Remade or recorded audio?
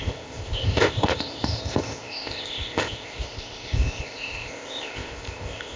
remade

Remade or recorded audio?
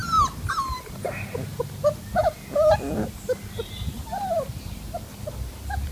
recorded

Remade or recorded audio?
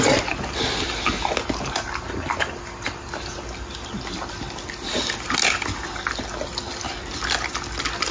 recorded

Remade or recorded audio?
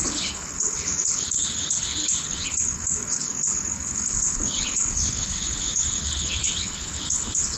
remade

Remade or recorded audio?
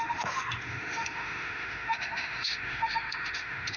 remade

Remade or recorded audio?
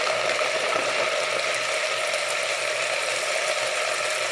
recorded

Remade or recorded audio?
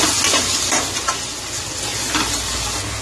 recorded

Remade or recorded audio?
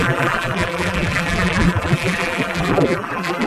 remade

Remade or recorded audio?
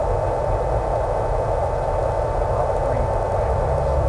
recorded